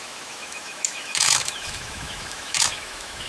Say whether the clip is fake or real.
fake